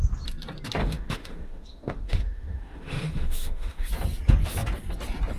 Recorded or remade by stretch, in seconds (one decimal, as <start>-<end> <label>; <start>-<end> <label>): 0.0-0.8 recorded; 0.8-3.9 remade; 3.9-5.4 recorded